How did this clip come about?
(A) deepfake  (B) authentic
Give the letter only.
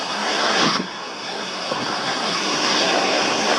A